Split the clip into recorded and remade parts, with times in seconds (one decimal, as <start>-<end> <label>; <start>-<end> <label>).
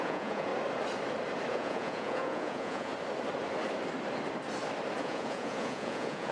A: 0.0-0.5 remade; 0.5-1.5 recorded; 1.5-2.9 remade; 2.9-5.0 recorded; 5.0-6.3 remade